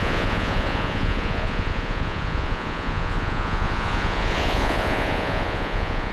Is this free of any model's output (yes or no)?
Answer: no